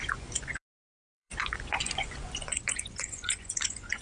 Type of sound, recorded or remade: remade